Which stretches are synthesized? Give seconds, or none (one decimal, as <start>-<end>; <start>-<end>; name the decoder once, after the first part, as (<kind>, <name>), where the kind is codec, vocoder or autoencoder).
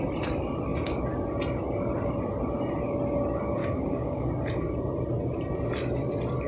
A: 3.6-4.3 (codec, DAC)